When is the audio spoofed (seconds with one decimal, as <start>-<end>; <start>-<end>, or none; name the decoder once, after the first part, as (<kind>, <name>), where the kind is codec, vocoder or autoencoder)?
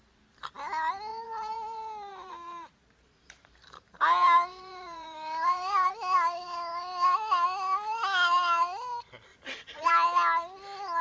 1.1-5.9 (vocoder, BigVGAN v2); 9.3-9.9